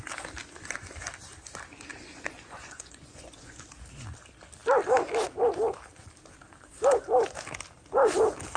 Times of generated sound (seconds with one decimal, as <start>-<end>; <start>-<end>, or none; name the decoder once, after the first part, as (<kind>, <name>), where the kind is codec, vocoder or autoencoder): 1.9-3.6 (vocoder, Vocos)